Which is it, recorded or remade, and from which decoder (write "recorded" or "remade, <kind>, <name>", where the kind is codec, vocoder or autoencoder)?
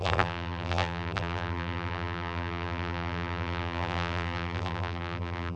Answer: remade, vocoder, BigVGAN v2